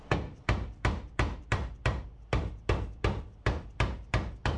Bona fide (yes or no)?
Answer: no